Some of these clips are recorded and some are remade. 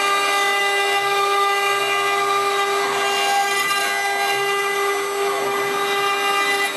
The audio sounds recorded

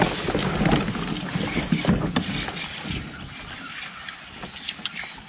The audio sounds recorded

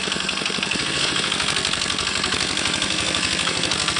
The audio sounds remade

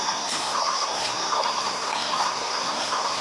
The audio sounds remade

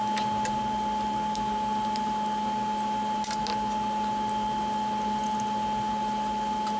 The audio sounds recorded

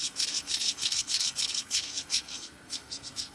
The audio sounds remade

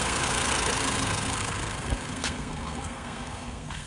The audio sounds remade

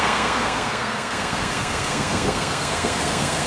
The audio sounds remade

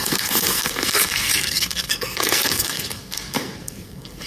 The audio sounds remade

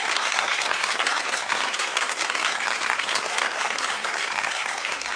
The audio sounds remade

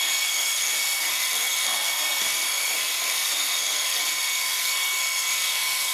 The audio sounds remade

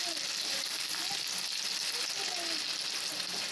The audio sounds recorded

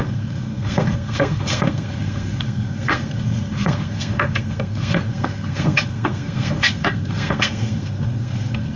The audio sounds remade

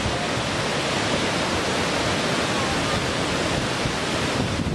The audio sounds recorded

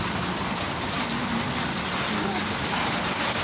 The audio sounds recorded